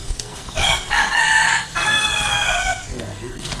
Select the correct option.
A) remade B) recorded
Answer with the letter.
A